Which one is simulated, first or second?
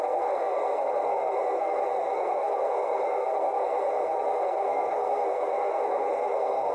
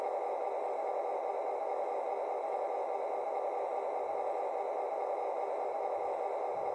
first